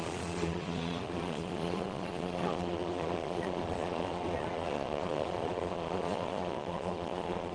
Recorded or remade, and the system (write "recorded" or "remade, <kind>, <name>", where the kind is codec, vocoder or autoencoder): remade, vocoder, Vocos